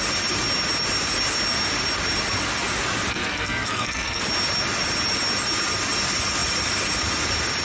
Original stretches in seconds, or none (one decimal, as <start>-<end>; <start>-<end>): 0.0-3.1; 4.2-7.6